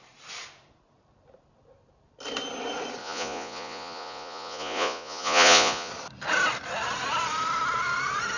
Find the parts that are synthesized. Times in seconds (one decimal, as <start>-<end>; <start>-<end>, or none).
3.0-5.9